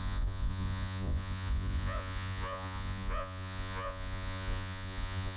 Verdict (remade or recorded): remade